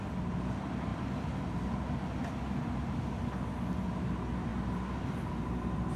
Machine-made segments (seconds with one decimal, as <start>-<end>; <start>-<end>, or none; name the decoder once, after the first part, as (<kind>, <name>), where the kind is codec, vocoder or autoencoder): none